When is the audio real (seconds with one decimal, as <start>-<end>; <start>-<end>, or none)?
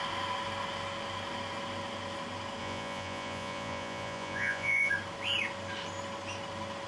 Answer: 0.0-2.6; 4.9-6.9